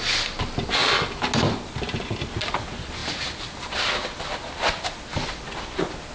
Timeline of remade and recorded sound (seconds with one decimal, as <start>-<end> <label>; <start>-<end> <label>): 0.0-6.1 recorded

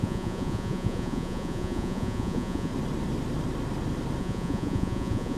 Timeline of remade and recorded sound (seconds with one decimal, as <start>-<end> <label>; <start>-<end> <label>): 0.0-2.7 remade; 2.7-4.2 recorded; 4.2-5.4 remade